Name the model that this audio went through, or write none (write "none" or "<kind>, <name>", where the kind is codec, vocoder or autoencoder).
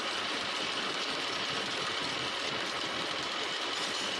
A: none